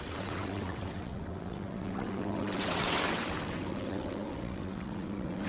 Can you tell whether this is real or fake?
fake